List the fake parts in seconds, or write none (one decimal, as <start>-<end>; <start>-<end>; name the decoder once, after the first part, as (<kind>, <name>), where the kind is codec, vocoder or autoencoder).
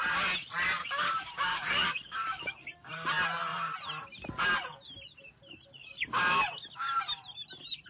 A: 0.8-2.9 (codec, DAC); 5.8-6.4